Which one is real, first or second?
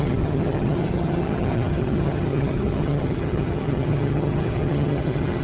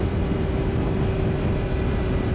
second